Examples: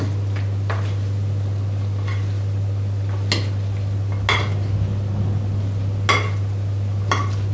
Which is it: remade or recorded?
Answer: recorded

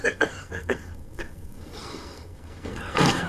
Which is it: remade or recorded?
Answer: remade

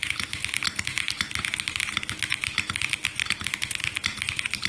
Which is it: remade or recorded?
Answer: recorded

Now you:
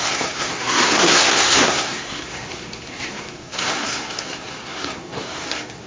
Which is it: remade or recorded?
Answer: remade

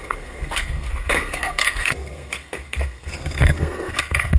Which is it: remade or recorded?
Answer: remade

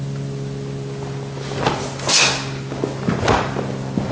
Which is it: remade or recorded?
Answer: recorded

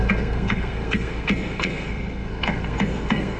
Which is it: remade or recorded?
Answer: remade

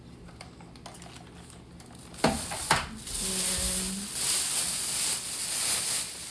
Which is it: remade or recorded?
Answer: recorded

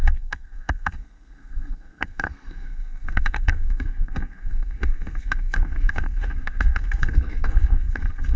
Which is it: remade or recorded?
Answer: remade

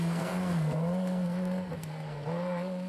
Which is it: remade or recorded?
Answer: remade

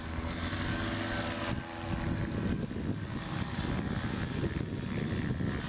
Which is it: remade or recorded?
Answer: recorded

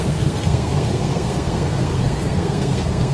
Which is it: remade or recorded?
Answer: remade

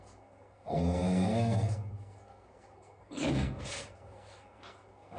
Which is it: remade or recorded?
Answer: remade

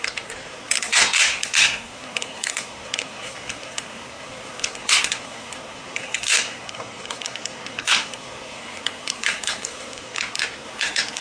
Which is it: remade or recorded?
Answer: remade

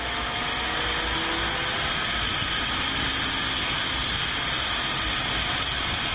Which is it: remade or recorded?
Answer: recorded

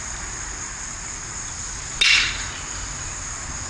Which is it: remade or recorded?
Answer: recorded